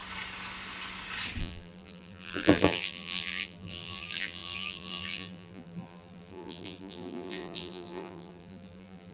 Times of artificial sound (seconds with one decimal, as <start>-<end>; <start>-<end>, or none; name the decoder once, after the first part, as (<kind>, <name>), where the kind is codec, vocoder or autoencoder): 1.4-9.1 (vocoder, BigVGAN v2)